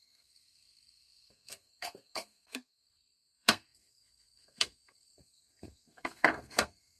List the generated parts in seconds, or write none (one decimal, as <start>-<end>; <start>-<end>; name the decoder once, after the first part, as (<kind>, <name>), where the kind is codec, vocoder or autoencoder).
0.0-7.0 (codec, SNAC)